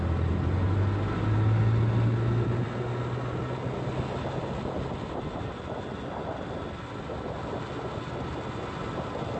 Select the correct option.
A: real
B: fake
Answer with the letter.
A